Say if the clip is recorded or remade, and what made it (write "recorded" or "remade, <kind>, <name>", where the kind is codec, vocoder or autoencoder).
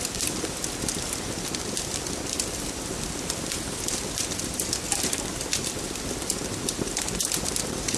recorded